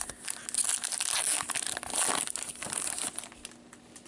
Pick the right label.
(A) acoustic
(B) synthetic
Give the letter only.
A